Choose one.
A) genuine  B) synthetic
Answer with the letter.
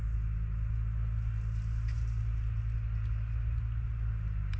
A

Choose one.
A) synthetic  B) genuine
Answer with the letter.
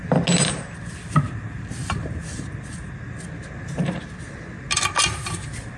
B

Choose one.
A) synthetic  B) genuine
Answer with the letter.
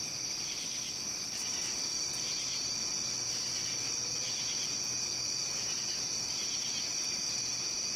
B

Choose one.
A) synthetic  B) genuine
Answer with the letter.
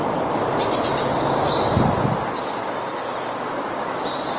B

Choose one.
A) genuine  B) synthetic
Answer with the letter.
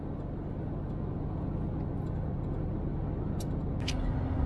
A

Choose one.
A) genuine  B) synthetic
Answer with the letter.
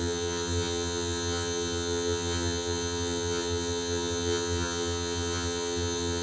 B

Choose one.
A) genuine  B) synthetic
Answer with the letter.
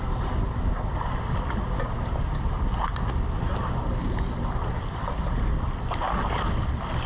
A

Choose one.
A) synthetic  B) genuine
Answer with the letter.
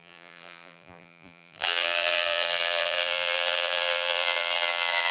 A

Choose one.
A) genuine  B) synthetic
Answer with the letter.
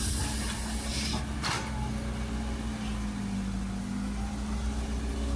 A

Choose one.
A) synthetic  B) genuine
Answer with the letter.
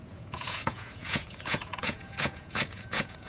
A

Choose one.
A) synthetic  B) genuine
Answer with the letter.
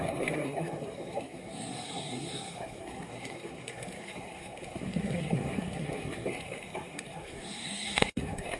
A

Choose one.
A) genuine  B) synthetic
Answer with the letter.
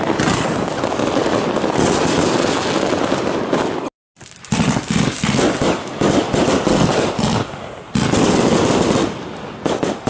A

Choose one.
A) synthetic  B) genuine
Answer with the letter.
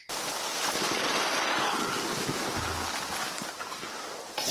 B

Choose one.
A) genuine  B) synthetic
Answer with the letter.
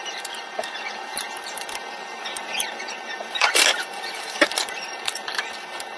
B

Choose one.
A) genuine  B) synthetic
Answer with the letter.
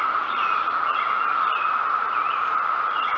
B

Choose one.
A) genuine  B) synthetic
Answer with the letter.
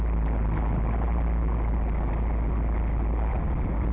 A